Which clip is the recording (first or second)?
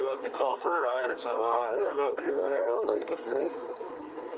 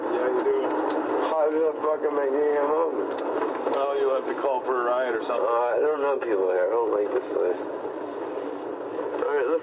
second